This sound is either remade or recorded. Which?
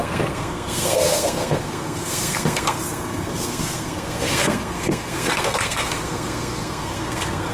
remade